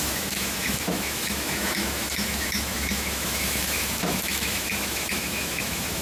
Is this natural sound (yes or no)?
no